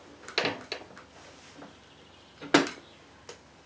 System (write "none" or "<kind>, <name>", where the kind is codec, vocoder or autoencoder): none